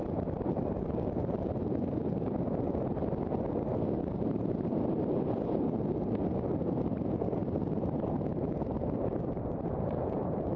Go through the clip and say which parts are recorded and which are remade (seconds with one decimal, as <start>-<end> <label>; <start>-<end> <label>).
0.0-3.0 remade; 3.0-3.9 recorded; 3.9-10.6 remade